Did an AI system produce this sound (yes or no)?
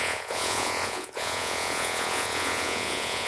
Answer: yes